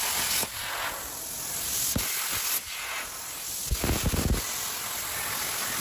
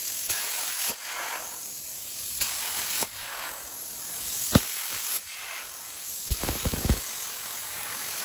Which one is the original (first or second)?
first